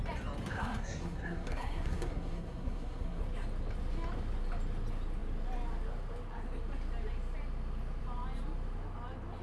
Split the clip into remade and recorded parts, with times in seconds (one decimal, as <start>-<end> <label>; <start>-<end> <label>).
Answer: 0.0-0.5 recorded; 0.5-3.2 remade; 3.2-9.4 recorded